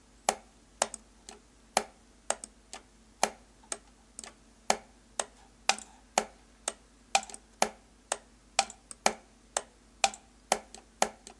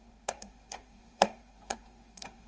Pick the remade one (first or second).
second